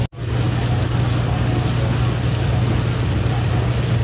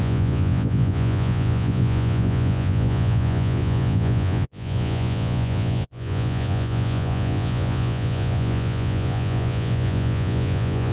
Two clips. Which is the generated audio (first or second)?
second